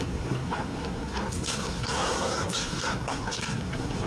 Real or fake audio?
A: fake